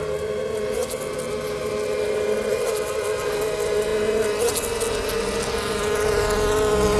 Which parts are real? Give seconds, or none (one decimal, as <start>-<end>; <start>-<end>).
0.0-7.0